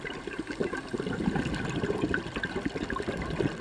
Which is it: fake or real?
real